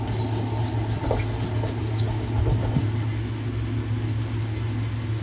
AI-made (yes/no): no